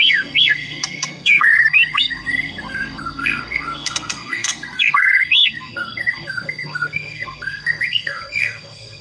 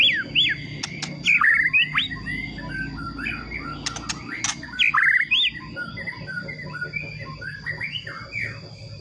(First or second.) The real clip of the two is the second